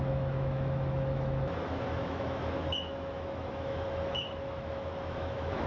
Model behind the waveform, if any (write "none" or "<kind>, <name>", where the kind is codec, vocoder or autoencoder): autoencoder, DAC-VAE